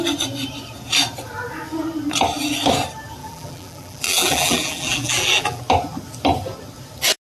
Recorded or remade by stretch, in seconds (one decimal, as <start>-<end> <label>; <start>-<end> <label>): 0.0-3.2 recorded; 3.2-5.6 remade; 5.6-7.2 recorded